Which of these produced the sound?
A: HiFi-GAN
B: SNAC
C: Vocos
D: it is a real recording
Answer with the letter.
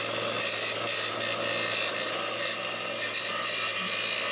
D